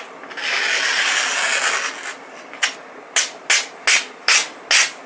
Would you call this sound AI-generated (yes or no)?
no